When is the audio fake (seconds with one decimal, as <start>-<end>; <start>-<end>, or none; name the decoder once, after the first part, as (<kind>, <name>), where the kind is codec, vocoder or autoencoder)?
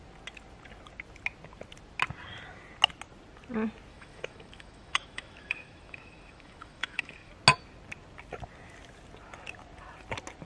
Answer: 3.9-7.3 (autoencoder, DAC-VAE)